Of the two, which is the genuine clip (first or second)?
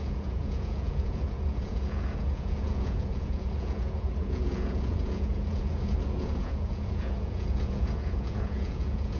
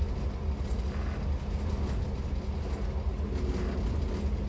second